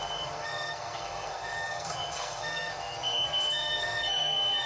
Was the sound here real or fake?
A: fake